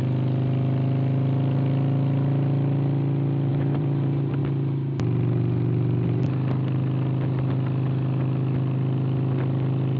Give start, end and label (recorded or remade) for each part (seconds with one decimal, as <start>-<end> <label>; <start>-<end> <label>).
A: 0.0-3.5 recorded; 3.5-4.4 remade; 4.4-10.0 recorded